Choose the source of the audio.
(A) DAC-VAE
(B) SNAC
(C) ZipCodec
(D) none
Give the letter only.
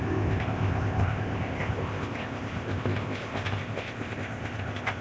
C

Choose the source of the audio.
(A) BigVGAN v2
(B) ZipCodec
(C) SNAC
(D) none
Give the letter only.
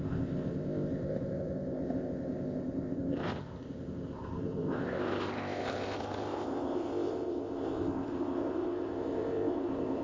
B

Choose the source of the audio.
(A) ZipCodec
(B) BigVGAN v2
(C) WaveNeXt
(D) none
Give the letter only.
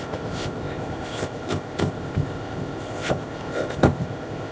A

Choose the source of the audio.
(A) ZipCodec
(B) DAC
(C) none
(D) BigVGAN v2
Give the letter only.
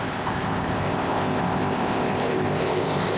A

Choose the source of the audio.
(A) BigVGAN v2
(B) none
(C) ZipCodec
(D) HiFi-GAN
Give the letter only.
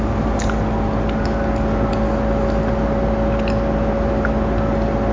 B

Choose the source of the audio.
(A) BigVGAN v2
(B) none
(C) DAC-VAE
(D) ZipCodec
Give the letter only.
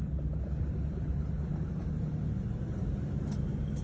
B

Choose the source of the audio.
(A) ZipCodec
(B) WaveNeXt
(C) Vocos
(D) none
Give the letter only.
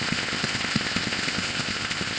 A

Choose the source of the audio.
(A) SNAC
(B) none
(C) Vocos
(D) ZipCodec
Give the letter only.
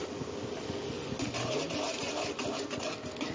B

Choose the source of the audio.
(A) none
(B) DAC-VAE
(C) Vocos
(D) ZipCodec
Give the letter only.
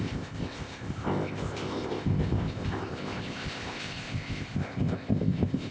D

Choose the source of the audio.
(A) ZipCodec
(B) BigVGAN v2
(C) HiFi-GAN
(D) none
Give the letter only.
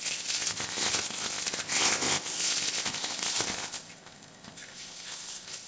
A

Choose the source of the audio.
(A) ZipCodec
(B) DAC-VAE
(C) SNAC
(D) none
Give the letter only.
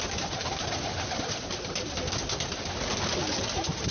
D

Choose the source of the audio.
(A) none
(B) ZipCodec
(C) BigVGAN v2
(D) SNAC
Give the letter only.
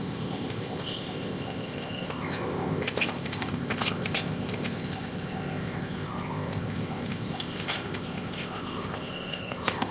B